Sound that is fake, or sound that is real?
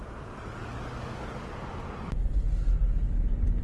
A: real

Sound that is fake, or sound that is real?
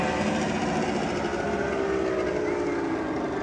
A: real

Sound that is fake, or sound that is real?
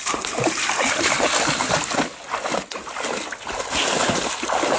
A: real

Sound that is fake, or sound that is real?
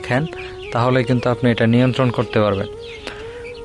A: real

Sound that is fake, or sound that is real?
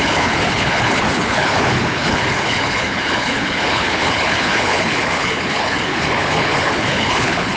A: fake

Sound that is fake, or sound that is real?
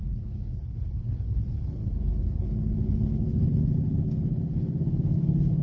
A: fake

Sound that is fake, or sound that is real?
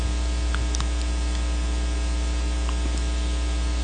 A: real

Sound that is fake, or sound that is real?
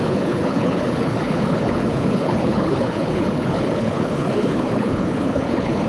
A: fake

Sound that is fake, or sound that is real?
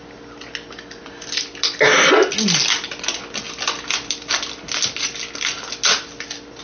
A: real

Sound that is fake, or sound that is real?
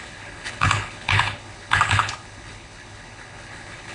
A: fake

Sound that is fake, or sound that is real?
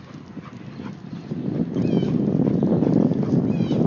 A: real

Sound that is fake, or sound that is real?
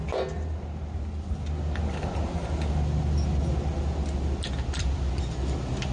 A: real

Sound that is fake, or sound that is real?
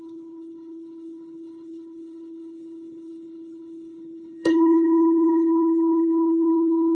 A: fake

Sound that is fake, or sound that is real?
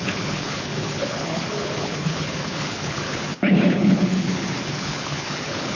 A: fake